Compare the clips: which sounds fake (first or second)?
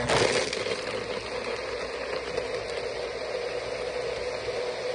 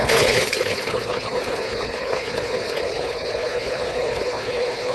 second